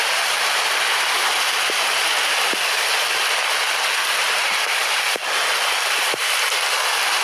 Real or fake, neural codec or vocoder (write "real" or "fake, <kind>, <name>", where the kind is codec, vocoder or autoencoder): real